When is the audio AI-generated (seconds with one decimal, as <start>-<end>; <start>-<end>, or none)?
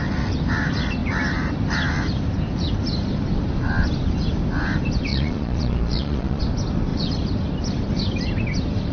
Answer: 5.1-6.4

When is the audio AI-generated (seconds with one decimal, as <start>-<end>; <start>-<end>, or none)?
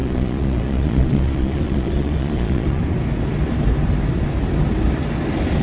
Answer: 0.0-2.8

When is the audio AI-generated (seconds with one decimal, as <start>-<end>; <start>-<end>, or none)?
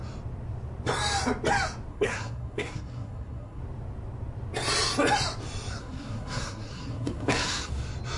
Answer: 1.9-3.6; 5.8-7.7